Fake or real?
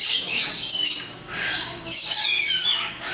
fake